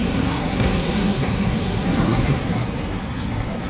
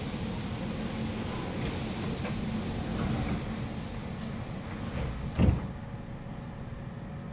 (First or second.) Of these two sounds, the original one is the second